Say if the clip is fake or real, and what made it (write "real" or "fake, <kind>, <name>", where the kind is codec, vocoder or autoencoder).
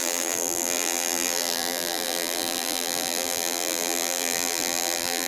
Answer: fake, vocoder, BigVGAN v2